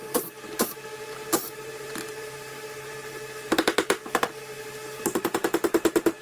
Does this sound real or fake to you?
fake